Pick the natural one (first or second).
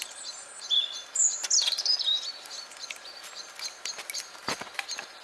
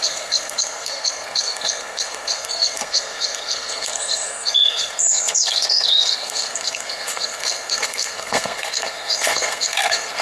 first